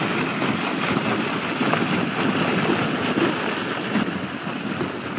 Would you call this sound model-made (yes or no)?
no